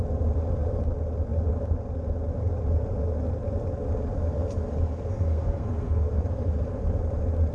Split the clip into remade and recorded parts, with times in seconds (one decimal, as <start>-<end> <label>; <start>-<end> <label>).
0.0-5.1 recorded; 5.1-6.2 remade; 6.2-7.5 recorded